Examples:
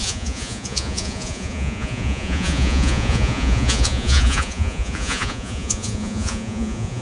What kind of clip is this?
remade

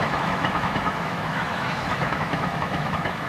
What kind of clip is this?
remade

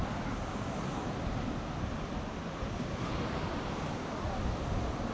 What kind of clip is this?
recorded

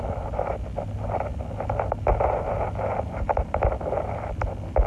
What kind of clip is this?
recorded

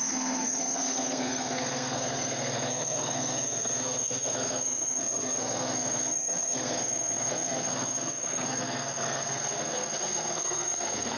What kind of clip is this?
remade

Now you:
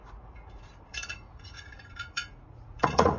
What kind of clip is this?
remade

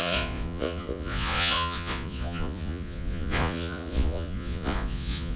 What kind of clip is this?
remade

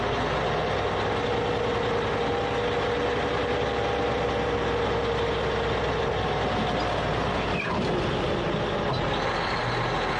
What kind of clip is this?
recorded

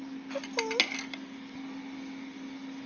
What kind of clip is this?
recorded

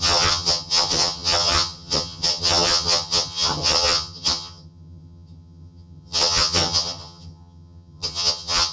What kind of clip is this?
remade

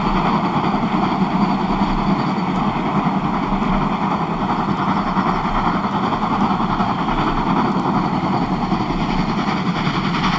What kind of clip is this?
recorded